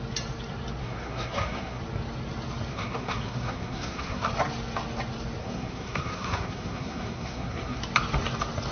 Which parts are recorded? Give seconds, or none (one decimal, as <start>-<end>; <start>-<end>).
0.0-0.8; 1.8-2.7; 4.3-5.4; 7.8-8.7